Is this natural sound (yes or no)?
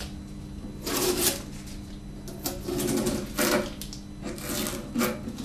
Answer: yes